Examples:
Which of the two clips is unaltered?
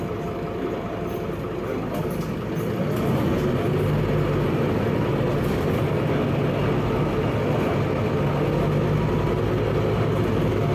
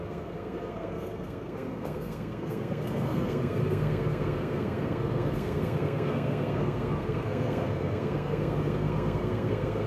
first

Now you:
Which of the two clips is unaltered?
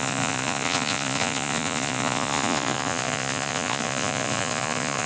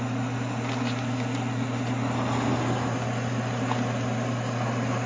second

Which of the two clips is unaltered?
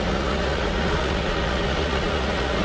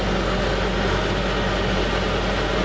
second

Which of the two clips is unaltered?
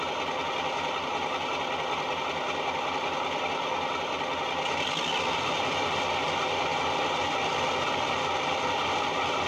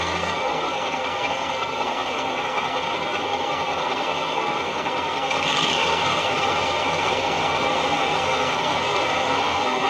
first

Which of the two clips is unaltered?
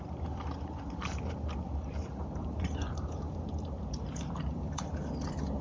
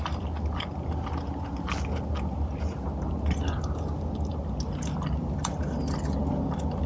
second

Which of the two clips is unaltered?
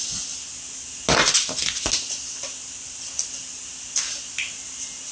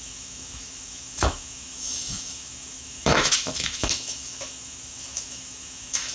first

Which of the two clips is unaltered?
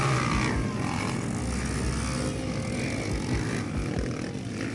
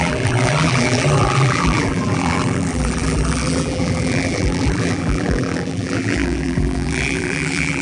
first